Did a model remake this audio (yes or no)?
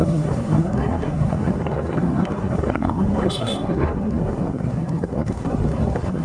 yes